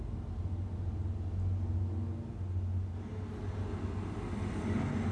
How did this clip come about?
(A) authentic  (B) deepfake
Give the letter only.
A